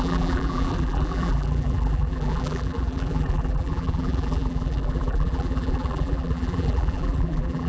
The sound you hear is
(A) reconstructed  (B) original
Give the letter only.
A